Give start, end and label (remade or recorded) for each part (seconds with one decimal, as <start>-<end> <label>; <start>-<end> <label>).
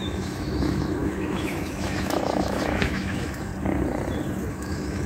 0.0-3.5 remade; 3.5-4.5 recorded; 4.5-5.1 remade